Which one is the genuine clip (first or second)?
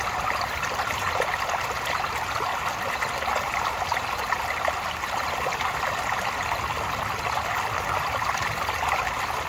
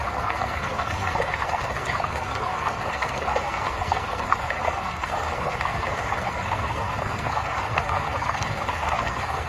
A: first